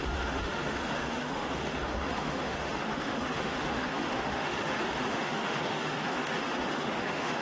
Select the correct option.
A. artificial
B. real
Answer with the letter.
A